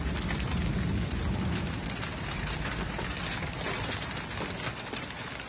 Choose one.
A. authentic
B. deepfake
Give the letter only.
A